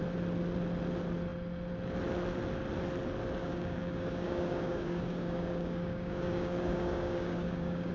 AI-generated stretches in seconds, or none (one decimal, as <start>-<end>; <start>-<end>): 3.4-7.9